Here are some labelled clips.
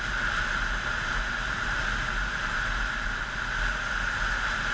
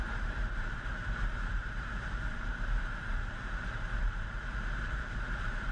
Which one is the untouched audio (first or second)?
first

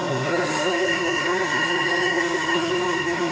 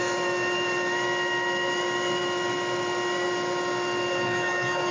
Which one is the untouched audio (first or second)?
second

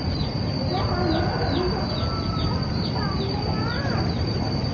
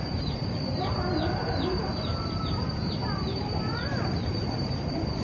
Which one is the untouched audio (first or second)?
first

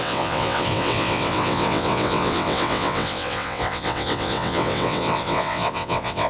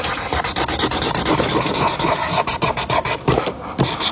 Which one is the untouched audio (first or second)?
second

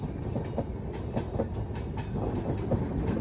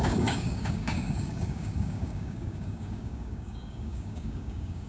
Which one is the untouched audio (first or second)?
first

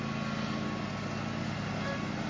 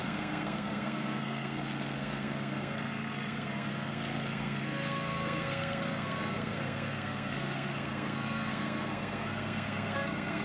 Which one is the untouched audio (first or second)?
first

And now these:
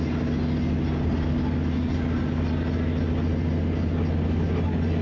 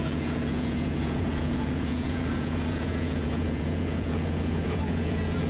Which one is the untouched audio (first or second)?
first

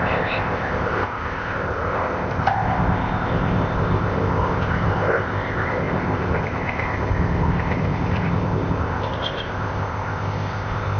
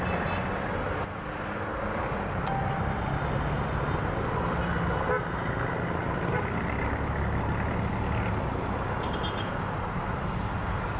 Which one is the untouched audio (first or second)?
second